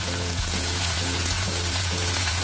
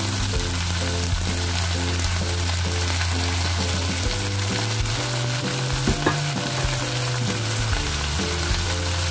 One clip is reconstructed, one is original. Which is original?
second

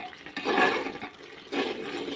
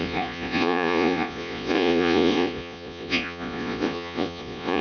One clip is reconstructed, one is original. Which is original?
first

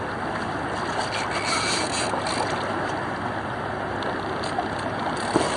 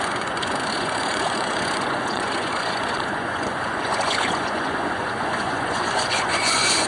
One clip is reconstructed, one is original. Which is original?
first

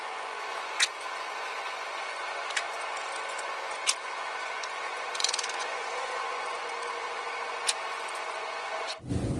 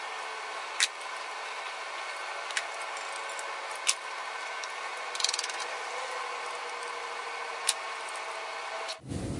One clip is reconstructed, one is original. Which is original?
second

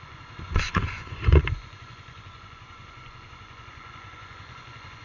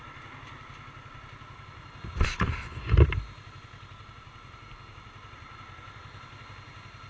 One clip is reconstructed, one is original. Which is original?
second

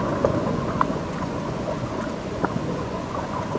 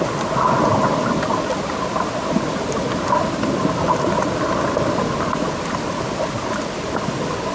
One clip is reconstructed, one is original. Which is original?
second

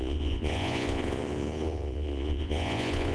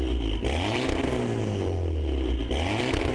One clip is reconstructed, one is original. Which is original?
second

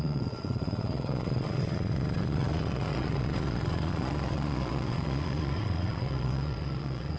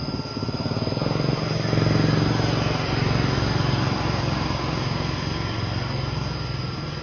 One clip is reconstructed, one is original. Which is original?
second